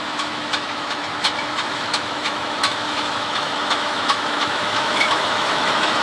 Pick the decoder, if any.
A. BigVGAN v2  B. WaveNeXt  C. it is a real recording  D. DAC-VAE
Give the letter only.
D